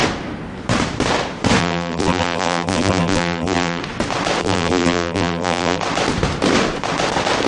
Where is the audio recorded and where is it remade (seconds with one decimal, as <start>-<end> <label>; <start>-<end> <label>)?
0.0-1.6 recorded; 1.6-3.8 remade; 3.8-4.4 recorded; 4.4-5.8 remade; 5.8-7.5 recorded